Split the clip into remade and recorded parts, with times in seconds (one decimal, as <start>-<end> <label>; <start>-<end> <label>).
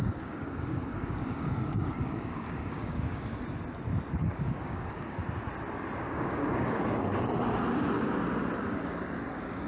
0.0-3.4 remade; 3.4-4.1 recorded; 4.1-5.2 remade; 5.2-6.0 recorded; 6.0-6.8 remade; 6.8-8.6 recorded; 8.6-9.7 remade